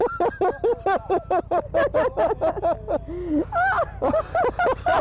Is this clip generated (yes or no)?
no